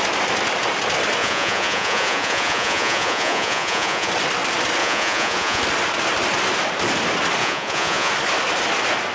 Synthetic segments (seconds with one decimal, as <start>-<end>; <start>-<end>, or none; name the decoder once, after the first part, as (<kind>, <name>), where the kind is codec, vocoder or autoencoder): 1.2-4.1 (vocoder, Vocos); 4.8-5.6; 7.4-8.1